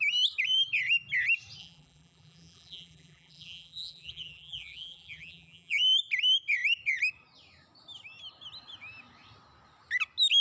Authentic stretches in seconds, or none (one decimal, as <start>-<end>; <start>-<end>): 0.0-1.6; 5.8-10.4